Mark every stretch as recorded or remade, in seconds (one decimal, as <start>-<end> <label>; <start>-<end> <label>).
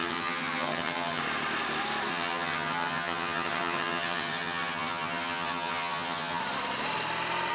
0.0-1.2 remade; 1.2-2.1 recorded; 2.1-6.4 remade; 6.4-7.5 recorded